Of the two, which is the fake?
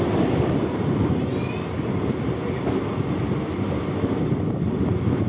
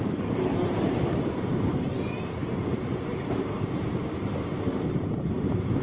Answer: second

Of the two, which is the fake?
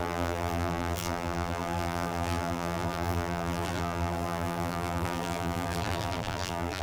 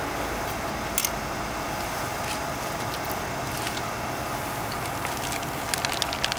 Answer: first